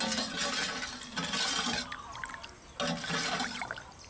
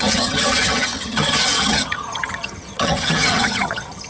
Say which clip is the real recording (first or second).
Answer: first